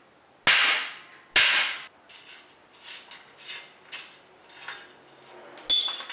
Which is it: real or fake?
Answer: real